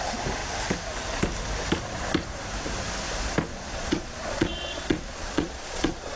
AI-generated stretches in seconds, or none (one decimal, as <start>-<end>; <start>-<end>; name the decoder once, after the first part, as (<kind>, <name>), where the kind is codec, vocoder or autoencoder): 3.5-6.2 (vocoder, Vocos)

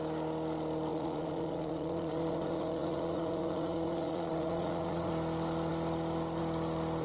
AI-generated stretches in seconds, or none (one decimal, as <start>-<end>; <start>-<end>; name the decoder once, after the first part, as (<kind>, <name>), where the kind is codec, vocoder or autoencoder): 0.9-5.1 (vocoder, Vocos)